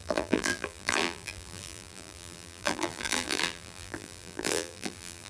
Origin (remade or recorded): remade